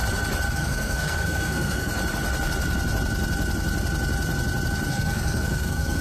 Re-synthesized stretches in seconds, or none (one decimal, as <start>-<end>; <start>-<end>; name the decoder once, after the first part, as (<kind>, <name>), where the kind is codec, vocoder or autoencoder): 0.5-1.9 (codec, SNAC); 4.9-6.0